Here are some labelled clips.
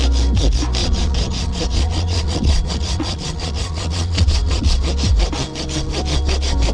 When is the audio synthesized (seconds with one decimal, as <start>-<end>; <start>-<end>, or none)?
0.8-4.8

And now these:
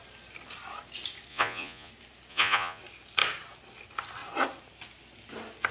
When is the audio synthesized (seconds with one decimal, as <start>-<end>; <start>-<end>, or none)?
1.3-1.9; 2.3-2.8

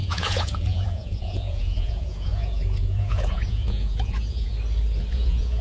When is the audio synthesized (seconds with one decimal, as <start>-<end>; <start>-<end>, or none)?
0.0-4.5; 5.1-5.6